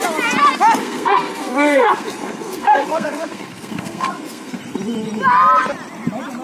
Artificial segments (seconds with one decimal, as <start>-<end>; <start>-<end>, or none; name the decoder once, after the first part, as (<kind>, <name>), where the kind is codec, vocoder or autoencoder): 0.8-4.6 (codec, SNAC)